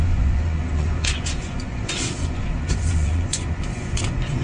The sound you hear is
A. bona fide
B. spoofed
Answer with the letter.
B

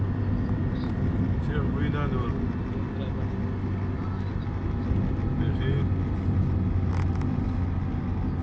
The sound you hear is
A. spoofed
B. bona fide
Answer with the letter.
B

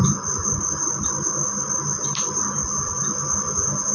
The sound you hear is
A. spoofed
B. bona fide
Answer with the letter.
A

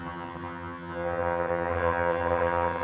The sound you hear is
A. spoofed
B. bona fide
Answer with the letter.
A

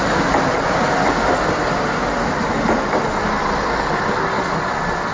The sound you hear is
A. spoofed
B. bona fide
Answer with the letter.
B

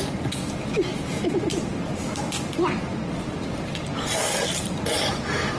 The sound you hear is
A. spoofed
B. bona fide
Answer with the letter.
B